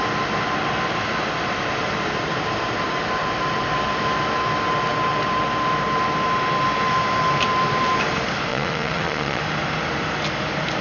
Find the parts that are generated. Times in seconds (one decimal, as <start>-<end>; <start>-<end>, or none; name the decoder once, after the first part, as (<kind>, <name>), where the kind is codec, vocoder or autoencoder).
8.5-9.4 (vocoder, Vocos)